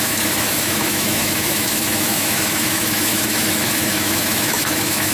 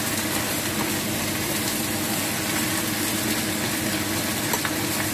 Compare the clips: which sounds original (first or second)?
second